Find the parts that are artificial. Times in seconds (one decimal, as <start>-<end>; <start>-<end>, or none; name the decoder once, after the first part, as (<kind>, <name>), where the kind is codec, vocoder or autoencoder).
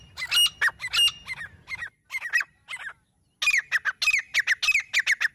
none